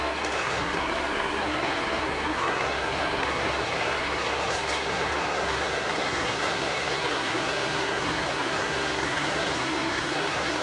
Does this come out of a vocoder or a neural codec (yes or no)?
yes